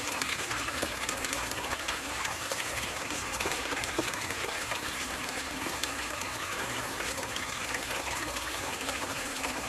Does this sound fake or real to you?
fake